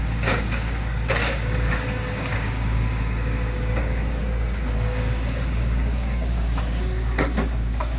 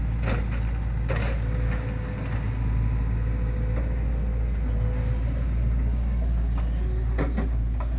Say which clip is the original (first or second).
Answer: second